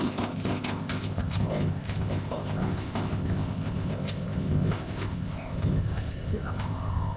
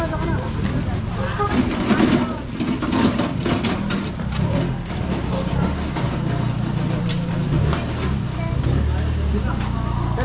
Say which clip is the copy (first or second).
first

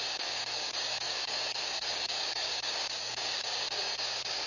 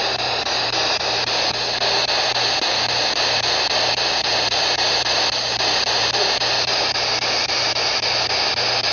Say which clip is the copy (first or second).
first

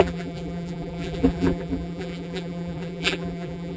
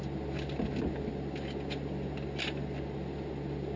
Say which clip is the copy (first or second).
first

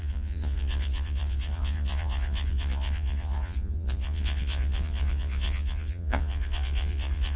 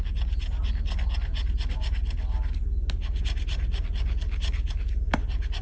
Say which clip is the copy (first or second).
first